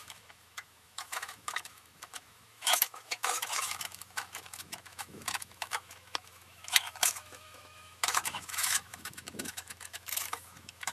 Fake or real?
fake